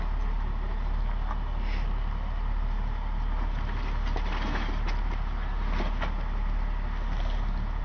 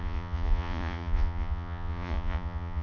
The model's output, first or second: second